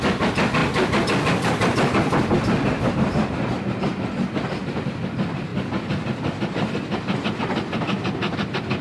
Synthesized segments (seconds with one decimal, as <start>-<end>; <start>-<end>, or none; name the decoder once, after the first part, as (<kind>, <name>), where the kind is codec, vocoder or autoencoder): 0.6-2.9 (vocoder, BigVGAN v2); 5.5-7.4